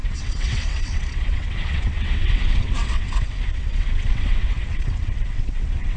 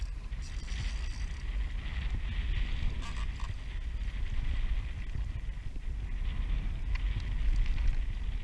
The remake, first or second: first